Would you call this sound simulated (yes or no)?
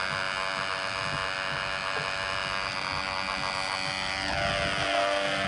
no